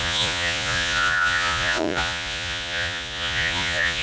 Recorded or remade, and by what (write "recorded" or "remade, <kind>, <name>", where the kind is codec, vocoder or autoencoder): remade, vocoder, Vocos